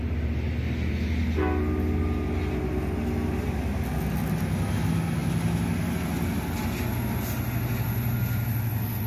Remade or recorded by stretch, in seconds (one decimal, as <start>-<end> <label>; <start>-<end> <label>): 0.0-9.1 recorded